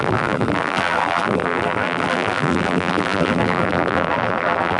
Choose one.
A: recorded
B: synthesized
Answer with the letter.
B